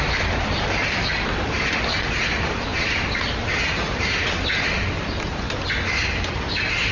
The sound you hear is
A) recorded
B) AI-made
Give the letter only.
A